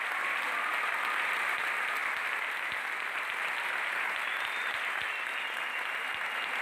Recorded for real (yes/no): yes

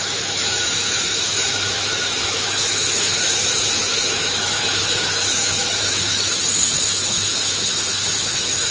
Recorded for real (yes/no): no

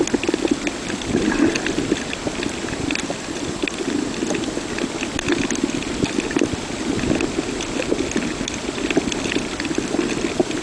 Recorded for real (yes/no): yes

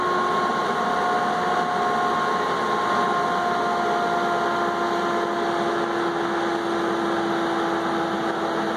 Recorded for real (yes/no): yes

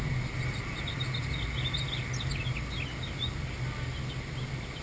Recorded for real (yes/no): yes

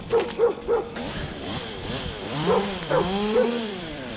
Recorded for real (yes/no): no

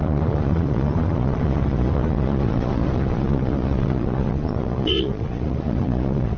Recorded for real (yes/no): no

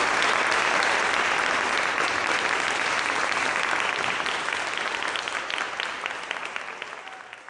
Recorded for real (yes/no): yes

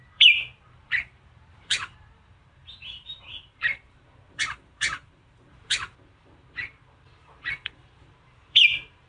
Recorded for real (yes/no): no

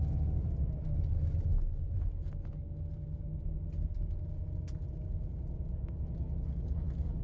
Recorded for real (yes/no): yes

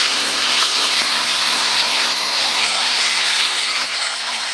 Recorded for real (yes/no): no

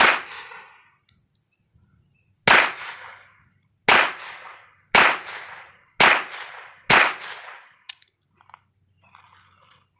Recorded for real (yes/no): yes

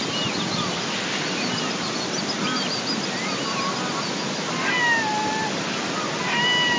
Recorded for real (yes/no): yes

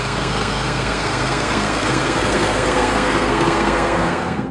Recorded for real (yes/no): no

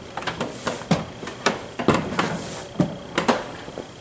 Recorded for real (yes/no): yes